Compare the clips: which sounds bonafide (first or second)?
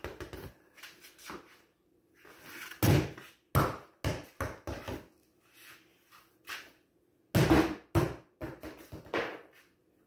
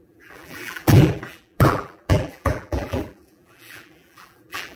first